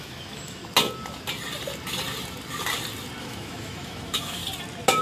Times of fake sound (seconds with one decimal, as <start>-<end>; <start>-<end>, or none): 0.0-0.6; 3.2-4.4